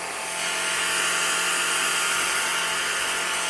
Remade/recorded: recorded